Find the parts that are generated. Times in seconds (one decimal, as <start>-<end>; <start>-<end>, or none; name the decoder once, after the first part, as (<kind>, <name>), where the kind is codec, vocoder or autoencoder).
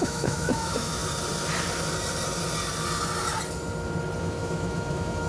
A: 0.0-1.0 (autoencoder, DAC-VAE); 4.2-5.3